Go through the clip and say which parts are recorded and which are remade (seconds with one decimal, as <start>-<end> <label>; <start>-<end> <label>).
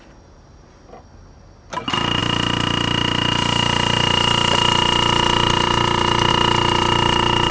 0.0-7.5 recorded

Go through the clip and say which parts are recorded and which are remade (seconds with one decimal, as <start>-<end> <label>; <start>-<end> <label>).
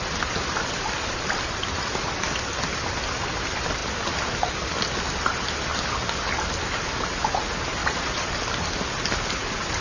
0.0-7.8 recorded; 7.8-8.3 remade; 8.3-9.8 recorded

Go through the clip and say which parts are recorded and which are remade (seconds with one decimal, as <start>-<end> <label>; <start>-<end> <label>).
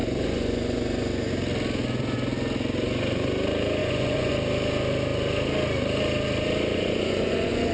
0.0-1.3 remade; 1.3-3.8 recorded; 3.8-4.3 remade; 4.3-6.7 recorded; 6.7-7.7 remade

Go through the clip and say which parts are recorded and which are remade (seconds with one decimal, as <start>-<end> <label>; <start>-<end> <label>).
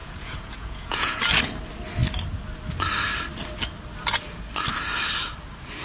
0.0-1.2 remade; 1.2-5.8 recorded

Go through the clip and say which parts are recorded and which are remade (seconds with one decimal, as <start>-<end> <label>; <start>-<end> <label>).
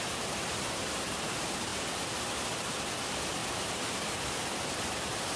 0.0-5.4 recorded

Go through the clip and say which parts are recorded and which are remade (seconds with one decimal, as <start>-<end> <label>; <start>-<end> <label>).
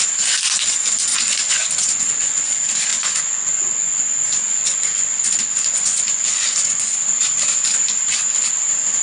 0.0-1.1 recorded; 1.1-2.5 remade; 2.5-2.9 recorded; 2.9-4.0 remade; 4.0-4.4 recorded; 4.4-6.9 remade; 6.9-9.0 recorded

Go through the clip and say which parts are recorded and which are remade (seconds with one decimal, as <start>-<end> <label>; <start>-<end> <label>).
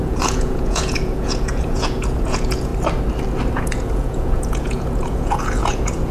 0.0-2.7 remade; 2.7-3.5 recorded; 3.5-6.1 remade